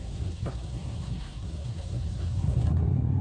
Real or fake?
fake